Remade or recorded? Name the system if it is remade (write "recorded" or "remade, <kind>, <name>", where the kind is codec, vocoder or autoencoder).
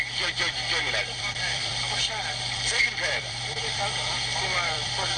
remade, vocoder, BigVGAN v2